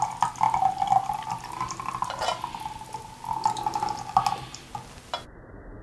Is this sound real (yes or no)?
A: yes